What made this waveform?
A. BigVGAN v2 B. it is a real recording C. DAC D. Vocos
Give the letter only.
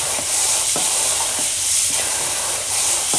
A